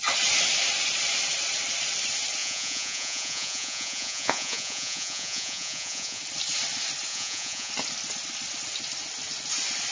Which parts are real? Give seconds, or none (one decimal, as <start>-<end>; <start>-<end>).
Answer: 0.0-2.4; 6.2-7.1; 7.7-9.9